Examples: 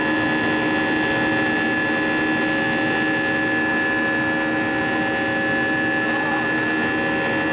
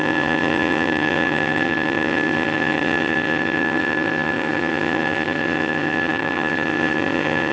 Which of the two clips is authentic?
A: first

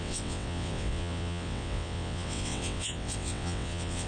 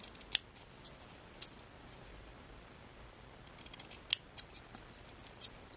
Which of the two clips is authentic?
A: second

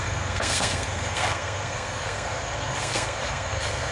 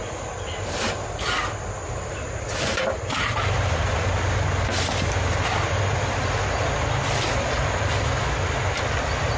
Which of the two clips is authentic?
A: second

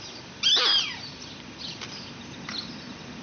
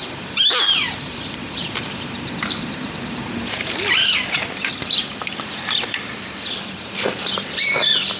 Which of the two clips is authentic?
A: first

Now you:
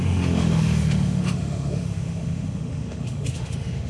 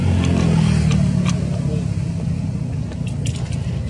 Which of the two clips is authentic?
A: second